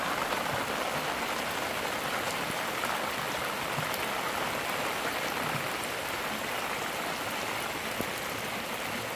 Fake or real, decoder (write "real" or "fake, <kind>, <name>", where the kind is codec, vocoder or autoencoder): real